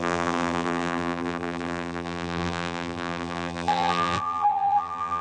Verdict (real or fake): fake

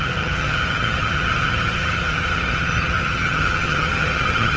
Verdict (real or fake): fake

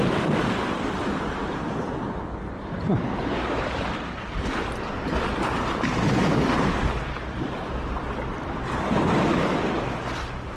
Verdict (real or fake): real